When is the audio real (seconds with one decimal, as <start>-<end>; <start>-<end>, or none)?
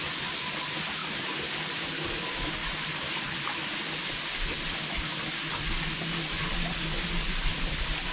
0.0-8.1